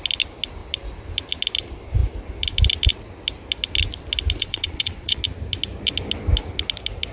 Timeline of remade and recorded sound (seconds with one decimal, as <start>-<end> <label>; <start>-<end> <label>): 0.0-4.4 recorded; 4.4-5.2 remade; 5.2-7.1 recorded